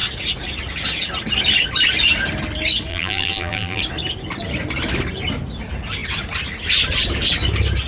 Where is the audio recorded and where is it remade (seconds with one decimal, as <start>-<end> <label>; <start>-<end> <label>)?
0.0-2.9 recorded; 2.9-3.8 remade; 3.8-7.9 recorded